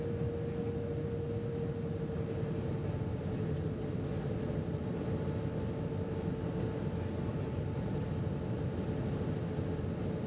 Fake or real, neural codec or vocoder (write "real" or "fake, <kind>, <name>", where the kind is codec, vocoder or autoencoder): real